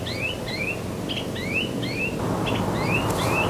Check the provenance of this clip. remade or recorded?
recorded